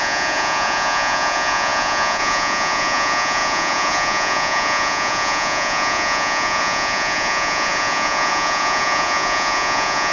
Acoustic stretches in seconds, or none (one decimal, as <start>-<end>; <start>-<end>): none